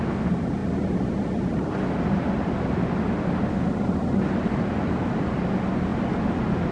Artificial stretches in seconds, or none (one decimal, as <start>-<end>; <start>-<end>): none

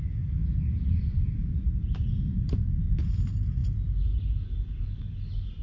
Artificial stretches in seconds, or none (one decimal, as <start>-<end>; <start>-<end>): none

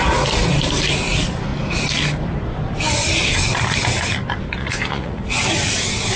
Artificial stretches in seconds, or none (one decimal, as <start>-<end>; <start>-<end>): 4.6-5.2